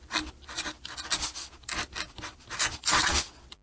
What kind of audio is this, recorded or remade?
remade